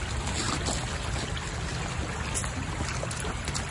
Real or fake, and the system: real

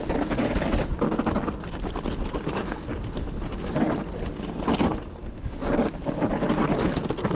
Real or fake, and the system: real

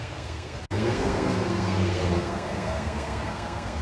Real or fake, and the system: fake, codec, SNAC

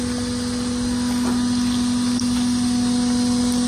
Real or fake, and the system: real